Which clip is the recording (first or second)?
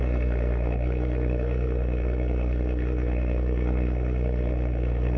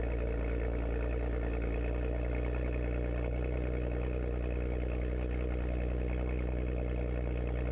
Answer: second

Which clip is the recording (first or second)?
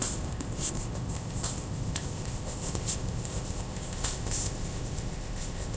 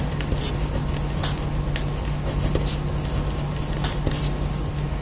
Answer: second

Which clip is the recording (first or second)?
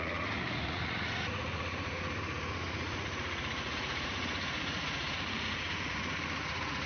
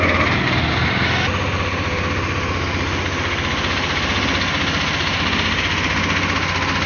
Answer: second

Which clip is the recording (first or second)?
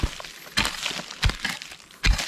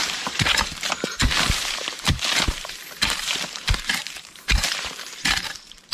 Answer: first